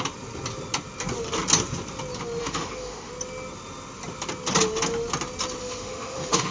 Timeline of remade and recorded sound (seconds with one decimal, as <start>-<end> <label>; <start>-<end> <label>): 0.0-2.4 recorded; 2.4-3.1 remade; 3.1-5.6 recorded; 5.6-6.5 remade